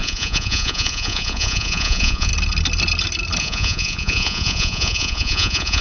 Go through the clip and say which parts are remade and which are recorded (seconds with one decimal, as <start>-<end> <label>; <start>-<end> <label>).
0.0-2.3 remade; 2.3-3.4 recorded; 3.4-5.8 remade